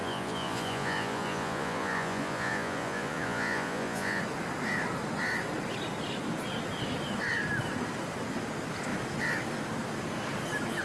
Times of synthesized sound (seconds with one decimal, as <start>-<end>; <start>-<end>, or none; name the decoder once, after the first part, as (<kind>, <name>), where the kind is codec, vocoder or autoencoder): 0.0-4.2 (vocoder, Vocos)